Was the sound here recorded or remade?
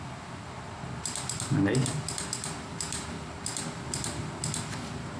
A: recorded